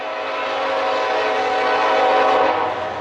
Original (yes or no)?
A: yes